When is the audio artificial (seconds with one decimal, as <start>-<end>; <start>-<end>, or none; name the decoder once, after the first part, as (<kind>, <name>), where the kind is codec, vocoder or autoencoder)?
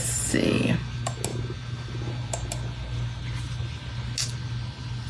none